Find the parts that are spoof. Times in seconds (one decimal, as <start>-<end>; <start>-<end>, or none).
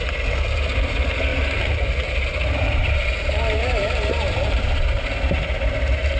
1.3-5.0